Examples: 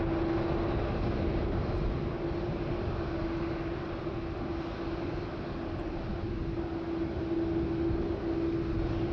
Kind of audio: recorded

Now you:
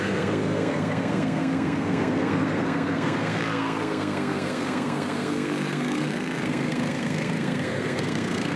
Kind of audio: remade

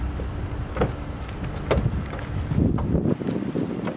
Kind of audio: recorded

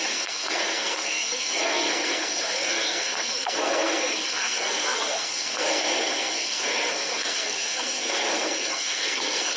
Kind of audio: remade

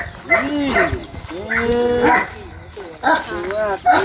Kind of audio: recorded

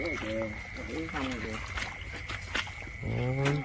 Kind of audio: recorded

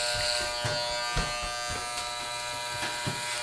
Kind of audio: recorded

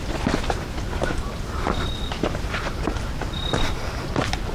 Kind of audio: recorded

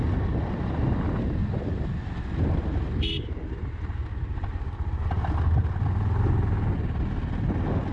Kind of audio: recorded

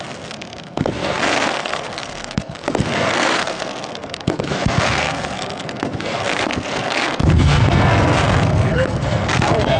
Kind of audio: remade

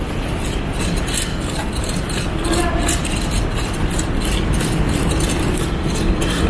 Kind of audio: recorded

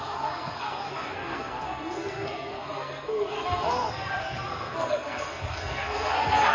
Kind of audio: remade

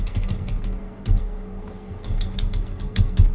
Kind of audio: remade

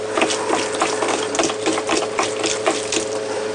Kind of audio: recorded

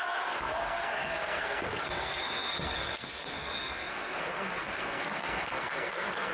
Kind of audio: remade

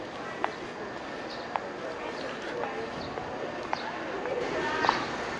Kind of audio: recorded